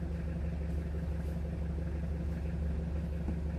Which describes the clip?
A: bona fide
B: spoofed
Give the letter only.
A